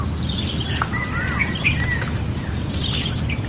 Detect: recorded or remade recorded